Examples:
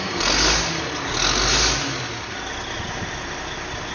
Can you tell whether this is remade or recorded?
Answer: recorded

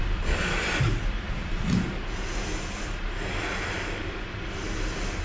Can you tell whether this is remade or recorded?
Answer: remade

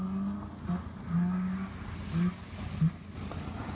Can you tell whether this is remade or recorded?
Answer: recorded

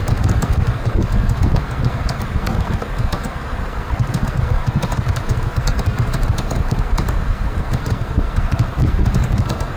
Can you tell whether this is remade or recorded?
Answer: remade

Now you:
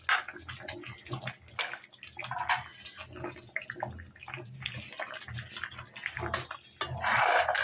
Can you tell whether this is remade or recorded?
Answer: recorded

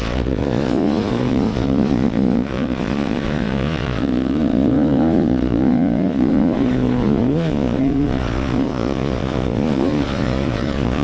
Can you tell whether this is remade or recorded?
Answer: remade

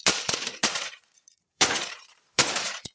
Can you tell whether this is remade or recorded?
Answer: remade